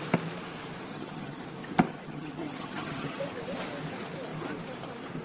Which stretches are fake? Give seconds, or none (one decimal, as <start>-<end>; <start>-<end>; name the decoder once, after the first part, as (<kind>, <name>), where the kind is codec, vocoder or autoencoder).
0.9-1.4 (vocoder, HiFi-GAN); 1.9-3.2